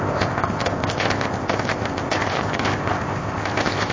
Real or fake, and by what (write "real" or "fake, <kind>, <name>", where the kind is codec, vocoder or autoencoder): fake, codec, ZipCodec